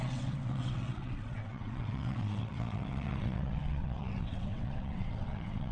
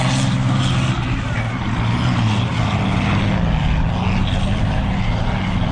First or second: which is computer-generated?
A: first